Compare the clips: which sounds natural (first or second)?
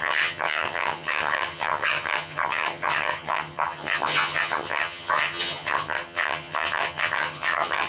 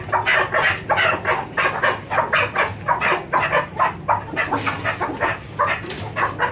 second